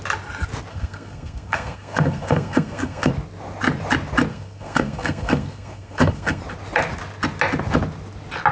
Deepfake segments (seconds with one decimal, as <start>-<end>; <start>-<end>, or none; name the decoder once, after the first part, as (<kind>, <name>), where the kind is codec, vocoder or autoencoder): 0.7-3.1 (codec, SNAC); 4.3-6.4